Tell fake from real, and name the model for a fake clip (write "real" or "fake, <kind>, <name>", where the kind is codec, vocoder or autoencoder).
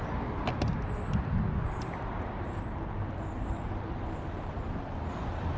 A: fake, vocoder, BigVGAN v2